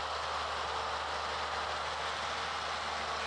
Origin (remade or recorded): recorded